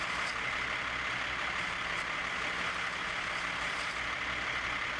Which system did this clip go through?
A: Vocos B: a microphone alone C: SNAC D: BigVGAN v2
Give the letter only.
B